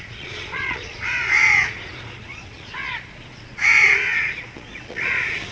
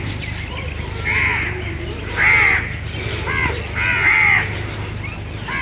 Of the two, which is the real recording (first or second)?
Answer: second